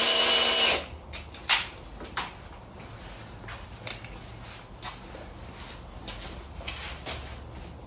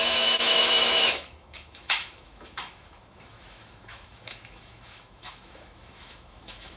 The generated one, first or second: second